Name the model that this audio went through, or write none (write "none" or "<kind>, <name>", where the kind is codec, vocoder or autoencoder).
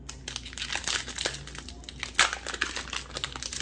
none